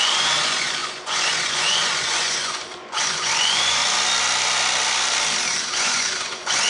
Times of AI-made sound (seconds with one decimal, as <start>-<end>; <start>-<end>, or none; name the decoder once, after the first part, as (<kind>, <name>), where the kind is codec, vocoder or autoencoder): 0.0-3.8 (vocoder, Vocos); 5.6-6.7